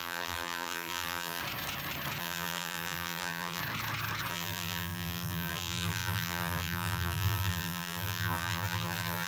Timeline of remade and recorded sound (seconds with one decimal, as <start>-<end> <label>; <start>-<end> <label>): 0.0-1.4 remade; 1.4-2.2 recorded; 2.2-3.6 remade; 3.6-4.3 recorded; 4.3-9.3 remade